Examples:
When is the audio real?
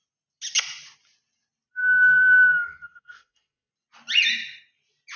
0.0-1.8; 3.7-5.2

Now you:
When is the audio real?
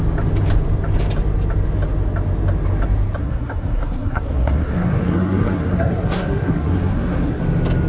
0.0-3.2; 7.4-7.9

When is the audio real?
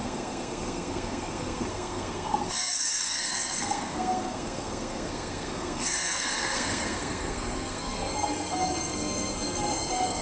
none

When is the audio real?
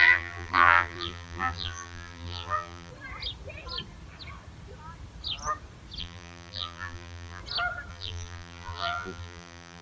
2.9-6.0; 7.4-7.9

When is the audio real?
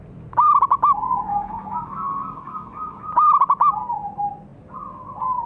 0.0-1.3; 3.0-5.5